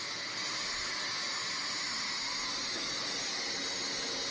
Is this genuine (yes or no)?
yes